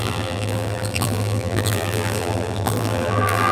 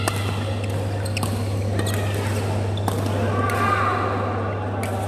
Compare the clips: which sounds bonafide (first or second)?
second